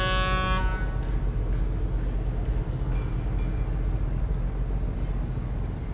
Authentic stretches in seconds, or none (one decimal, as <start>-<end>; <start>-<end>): 0.0-5.9